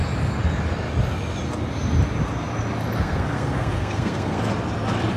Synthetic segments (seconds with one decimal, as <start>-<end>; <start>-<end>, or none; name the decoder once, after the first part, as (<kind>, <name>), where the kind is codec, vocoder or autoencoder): 3.0-4.5 (codec, SNAC)